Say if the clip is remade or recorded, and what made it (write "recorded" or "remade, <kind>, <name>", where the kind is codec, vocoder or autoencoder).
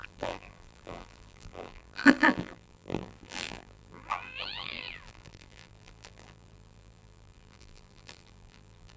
remade, vocoder, BigVGAN v2